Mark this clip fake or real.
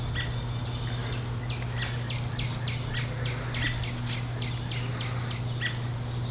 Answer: real